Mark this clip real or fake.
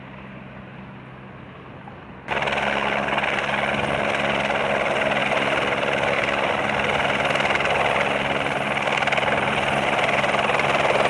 real